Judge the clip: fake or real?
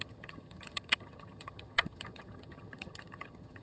fake